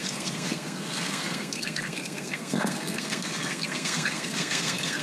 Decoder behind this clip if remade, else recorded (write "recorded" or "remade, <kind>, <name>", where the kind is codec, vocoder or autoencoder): remade, codec, SNAC